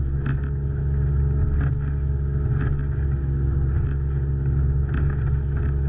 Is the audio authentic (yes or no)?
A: yes